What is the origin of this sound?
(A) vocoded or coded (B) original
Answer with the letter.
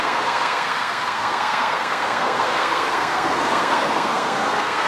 A